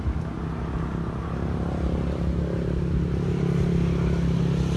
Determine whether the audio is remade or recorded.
recorded